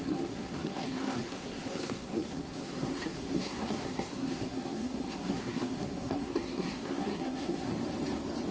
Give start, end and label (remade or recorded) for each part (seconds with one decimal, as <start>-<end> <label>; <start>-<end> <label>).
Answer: 0.0-7.7 remade; 7.7-8.5 recorded